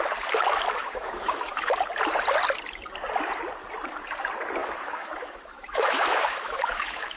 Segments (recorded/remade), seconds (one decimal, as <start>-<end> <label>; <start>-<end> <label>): 0.0-0.8 recorded; 0.8-1.8 remade; 1.8-4.6 recorded; 4.6-7.2 remade